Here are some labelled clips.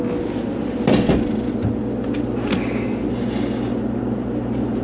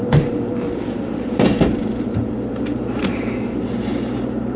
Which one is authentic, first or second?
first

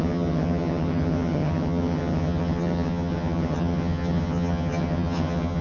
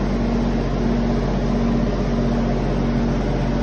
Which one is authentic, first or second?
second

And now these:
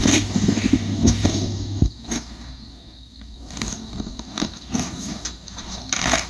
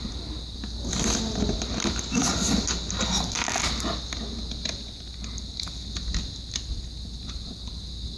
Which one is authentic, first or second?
second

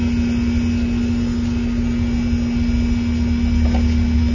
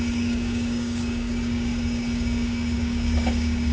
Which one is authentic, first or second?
first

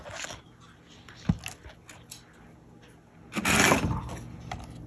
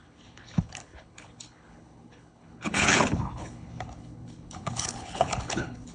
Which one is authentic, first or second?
first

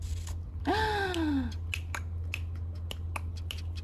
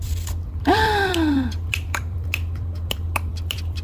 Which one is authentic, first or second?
first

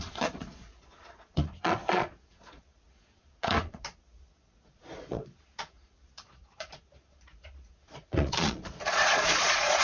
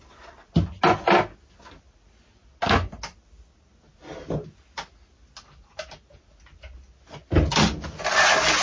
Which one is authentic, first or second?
second